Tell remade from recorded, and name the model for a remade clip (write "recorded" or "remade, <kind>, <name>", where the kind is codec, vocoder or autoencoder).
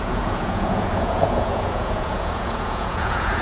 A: remade, vocoder, Vocos